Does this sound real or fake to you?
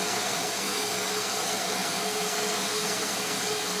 fake